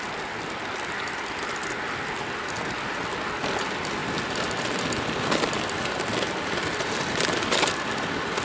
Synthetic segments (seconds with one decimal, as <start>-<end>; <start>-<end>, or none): none